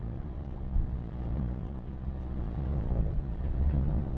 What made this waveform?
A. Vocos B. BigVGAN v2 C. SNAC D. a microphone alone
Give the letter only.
A